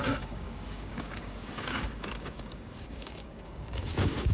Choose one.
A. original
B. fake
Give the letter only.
B